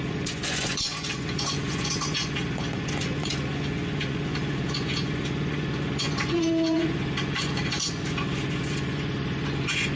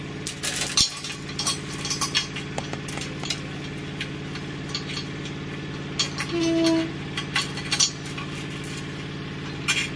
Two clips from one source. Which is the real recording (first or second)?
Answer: second